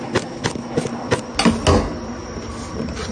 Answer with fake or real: real